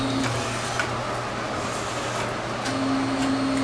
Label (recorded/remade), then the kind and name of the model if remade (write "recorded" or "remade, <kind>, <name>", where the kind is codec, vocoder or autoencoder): recorded